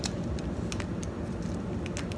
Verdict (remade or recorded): recorded